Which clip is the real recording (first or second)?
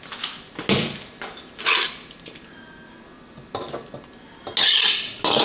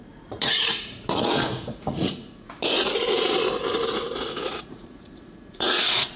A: first